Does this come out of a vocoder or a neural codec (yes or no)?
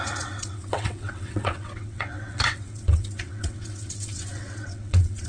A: yes